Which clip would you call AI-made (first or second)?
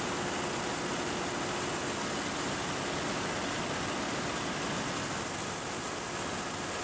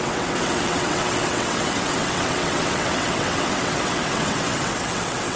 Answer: second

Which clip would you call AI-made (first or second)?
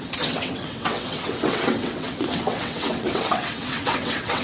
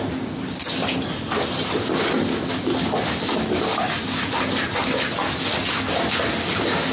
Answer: first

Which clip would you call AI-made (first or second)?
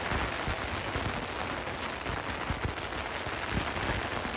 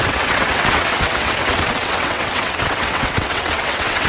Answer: second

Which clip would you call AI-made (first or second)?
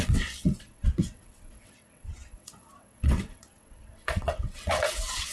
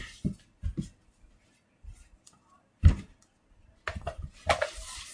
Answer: first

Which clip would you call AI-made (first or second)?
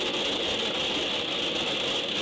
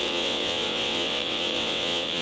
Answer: second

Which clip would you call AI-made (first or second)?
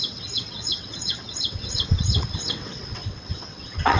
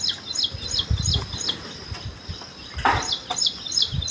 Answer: first